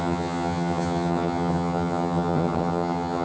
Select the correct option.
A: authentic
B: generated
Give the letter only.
B